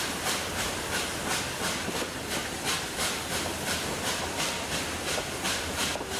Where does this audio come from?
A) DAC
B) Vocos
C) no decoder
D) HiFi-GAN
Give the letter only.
C